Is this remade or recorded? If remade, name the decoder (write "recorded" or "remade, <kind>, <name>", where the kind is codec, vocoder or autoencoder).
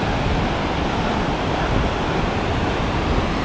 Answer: recorded